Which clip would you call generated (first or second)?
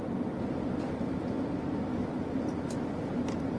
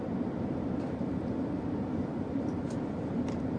second